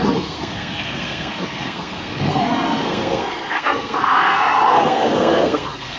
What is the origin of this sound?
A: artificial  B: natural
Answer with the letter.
A